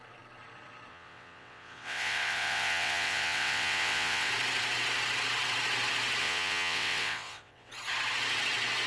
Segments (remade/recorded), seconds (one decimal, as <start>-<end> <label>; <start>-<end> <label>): 0.0-0.9 recorded; 0.9-4.3 remade; 4.3-6.2 recorded; 6.2-7.7 remade; 7.7-8.9 recorded